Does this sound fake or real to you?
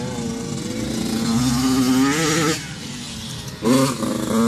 real